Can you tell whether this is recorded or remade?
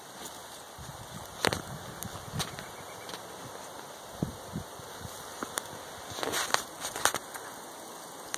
recorded